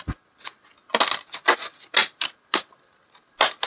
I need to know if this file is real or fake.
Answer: real